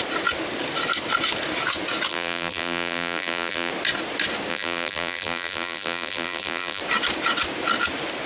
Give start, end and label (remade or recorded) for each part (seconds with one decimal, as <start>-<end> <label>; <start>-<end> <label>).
0.0-2.1 recorded; 2.1-3.7 remade; 3.7-4.5 recorded; 4.5-6.8 remade; 6.8-8.3 recorded